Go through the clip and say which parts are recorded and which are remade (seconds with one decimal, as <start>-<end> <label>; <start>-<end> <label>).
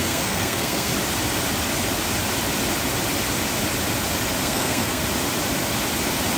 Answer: 0.0-0.9 remade; 0.9-4.4 recorded; 4.4-5.0 remade; 5.0-6.4 recorded